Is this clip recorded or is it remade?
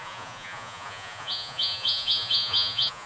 remade